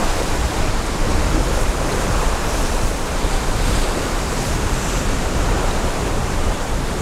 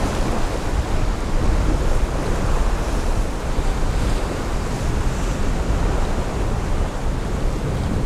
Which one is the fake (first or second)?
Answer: first